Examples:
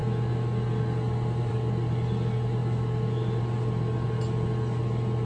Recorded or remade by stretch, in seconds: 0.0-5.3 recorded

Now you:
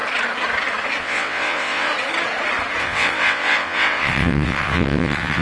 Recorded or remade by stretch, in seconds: 0.0-1.0 recorded; 1.0-1.9 remade; 1.9-2.8 recorded; 2.8-5.4 remade

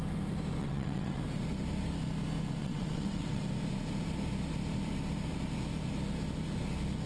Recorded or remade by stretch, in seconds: 0.0-0.6 recorded; 0.6-1.2 remade; 1.2-2.6 recorded; 2.6-3.4 remade; 3.4-7.1 recorded